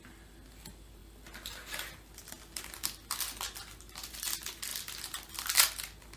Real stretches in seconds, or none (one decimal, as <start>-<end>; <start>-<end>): 0.0-6.2